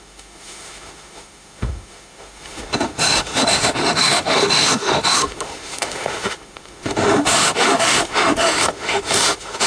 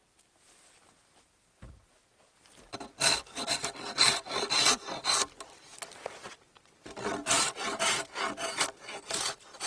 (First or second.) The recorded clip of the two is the second